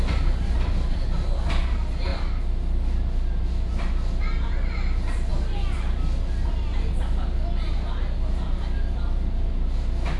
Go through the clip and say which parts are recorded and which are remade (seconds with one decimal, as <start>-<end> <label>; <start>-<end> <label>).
0.0-10.2 recorded